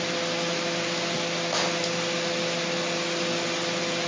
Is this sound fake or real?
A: real